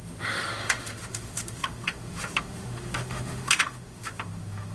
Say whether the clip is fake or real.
fake